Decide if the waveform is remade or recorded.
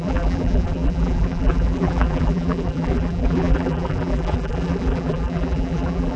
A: remade